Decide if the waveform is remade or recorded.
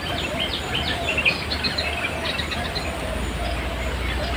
recorded